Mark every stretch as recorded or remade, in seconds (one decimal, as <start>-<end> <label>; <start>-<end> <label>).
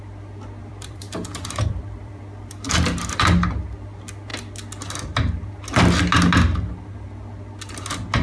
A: 0.0-0.6 recorded; 0.6-3.6 remade; 3.6-8.2 recorded